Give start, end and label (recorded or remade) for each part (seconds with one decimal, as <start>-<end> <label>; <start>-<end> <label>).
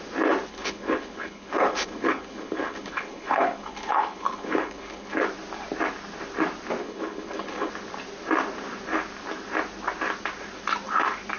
0.0-0.5 recorded; 0.5-5.2 remade; 5.2-6.8 recorded; 6.8-7.7 remade; 7.7-11.4 recorded